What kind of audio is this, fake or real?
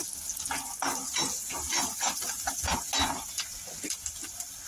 real